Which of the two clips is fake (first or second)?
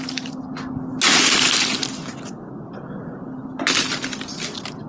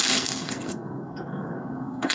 second